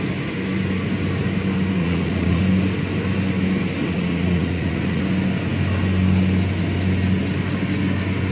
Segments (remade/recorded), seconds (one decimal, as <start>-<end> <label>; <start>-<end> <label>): 0.0-1.8 recorded; 1.8-2.4 remade; 2.4-3.8 recorded; 3.8-5.0 remade; 5.0-8.3 recorded